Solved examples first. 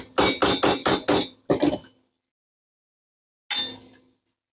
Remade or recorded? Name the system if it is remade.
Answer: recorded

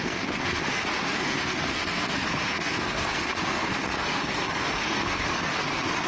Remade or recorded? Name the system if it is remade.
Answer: remade, codec, SNAC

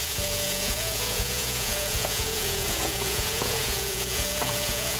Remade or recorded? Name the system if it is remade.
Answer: remade, vocoder, Vocos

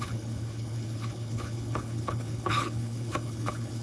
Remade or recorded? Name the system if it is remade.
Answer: remade, codec, HILCodec